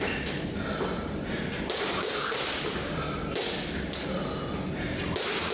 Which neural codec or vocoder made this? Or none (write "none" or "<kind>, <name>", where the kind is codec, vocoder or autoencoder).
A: none